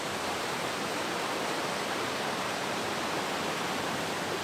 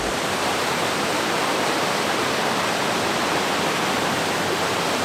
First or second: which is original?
second